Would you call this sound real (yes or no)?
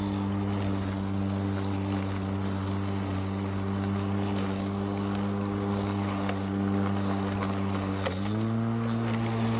yes